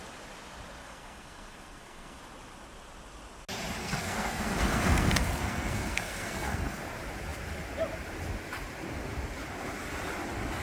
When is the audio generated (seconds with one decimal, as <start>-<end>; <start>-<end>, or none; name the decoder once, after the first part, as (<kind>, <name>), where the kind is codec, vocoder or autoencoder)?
0.8-2.2 (codec, SNAC); 3.8-6.8